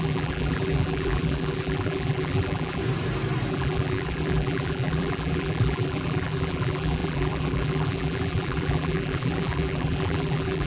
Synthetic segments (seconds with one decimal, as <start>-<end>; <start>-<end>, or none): 0.0-2.8; 3.5-10.7

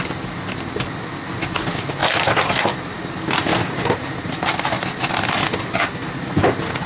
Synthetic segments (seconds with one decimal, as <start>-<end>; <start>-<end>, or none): 2.0-5.9

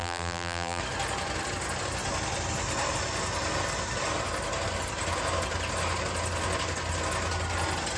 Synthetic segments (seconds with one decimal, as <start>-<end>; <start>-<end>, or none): 0.0-0.8

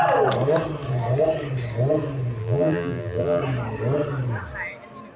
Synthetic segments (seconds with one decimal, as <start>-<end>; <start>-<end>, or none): 2.4-3.4

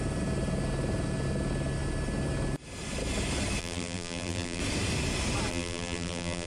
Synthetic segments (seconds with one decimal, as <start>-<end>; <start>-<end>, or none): 3.6-4.6; 5.5-6.5

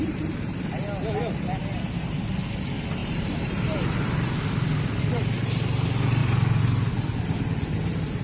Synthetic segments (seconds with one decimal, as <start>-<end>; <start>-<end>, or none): 3.0-4.1; 6.2-6.9

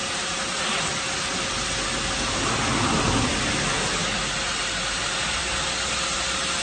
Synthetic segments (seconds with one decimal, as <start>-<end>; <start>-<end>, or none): 0.0-0.8